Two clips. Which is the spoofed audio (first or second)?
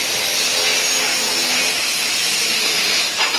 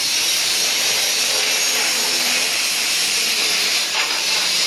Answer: second